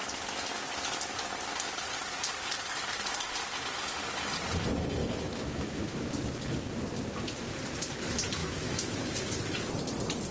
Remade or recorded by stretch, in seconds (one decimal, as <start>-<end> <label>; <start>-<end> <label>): 0.0-5.0 recorded; 5.0-6.1 remade; 6.1-8.4 recorded; 8.4-9.4 remade; 9.4-10.3 recorded